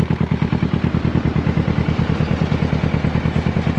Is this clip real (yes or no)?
yes